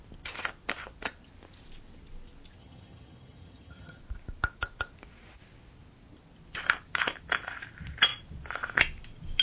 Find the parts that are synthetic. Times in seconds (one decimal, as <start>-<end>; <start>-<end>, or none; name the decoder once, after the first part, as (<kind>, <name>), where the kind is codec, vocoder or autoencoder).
2.6-4.0 (vocoder, HiFi-GAN)